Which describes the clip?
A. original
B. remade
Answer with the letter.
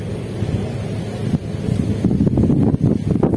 A